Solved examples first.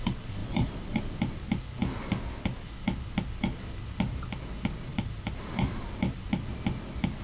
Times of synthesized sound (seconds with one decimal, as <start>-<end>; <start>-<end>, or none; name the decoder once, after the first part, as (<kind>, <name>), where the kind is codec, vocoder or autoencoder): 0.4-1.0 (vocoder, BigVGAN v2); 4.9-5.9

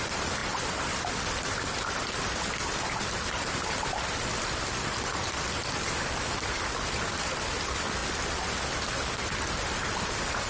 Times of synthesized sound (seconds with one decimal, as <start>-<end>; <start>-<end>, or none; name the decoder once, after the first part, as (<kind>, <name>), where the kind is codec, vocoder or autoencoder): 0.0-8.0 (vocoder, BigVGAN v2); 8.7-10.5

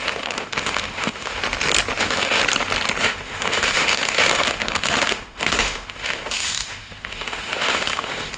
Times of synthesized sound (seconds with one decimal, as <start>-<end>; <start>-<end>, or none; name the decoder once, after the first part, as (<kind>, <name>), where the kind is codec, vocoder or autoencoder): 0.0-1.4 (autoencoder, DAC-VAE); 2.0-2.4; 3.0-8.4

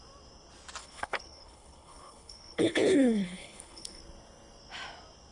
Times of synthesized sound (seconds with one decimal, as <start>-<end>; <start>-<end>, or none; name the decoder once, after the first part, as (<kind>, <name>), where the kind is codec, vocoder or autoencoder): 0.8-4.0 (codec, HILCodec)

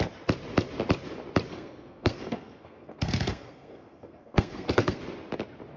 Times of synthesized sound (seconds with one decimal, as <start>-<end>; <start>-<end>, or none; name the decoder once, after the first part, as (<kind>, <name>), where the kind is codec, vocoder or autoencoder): 1.5-5.0 (codec, SNAC)

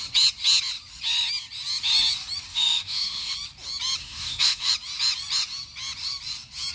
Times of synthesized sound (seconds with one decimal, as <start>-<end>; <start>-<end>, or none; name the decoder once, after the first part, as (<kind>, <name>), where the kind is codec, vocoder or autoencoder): 2.5-3.3 (autoencoder, DAC-VAE); 4.0-4.7

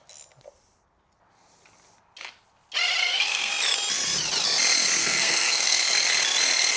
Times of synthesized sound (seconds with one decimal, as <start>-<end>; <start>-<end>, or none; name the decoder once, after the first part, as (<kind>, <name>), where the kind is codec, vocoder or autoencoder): 3.0-3.5 (codec, SNAC); 5.0-5.8

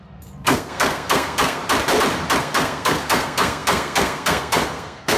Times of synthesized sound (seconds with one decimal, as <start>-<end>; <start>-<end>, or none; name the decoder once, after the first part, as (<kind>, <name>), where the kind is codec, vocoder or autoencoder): 0.0-1.6 (codec, SNAC); 2.4-5.2